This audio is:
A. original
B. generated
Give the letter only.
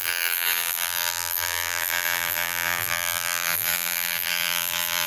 B